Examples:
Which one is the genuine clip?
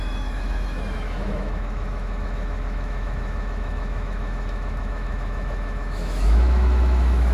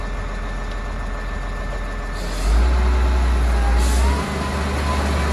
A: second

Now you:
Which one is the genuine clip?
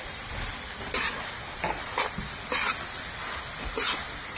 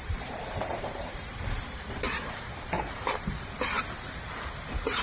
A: first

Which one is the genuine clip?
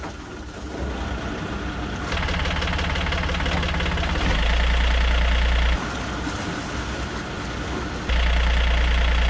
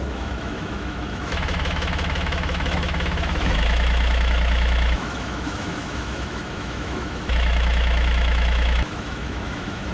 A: first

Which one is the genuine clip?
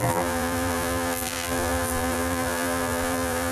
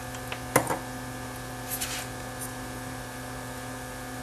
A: second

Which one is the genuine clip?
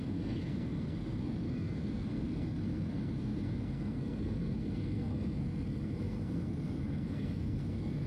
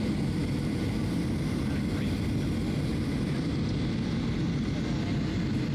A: second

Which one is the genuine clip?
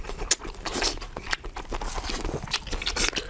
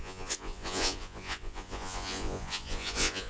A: first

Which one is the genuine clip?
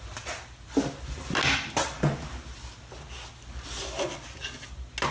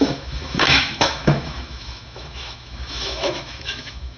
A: first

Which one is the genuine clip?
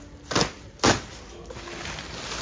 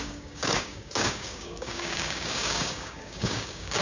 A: first